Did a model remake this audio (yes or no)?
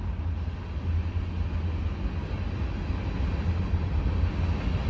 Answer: no